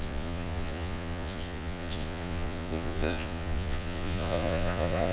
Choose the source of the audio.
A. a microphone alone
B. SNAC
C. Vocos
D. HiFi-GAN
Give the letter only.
C